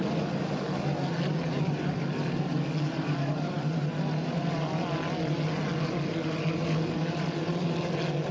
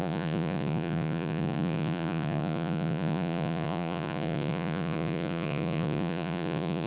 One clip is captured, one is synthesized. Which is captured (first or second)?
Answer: first